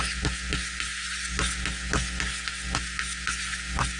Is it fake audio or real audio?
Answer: real